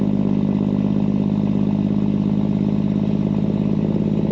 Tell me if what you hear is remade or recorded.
recorded